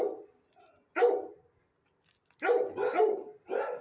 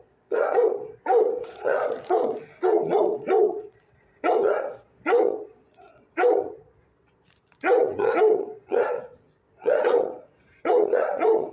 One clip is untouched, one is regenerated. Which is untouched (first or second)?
first